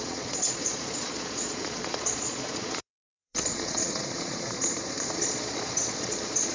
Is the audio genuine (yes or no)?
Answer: no